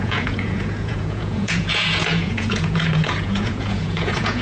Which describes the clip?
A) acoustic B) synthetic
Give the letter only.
B